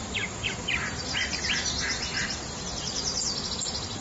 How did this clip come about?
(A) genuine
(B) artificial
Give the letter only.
A